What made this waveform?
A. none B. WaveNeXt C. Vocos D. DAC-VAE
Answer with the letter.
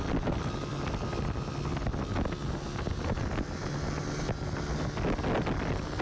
A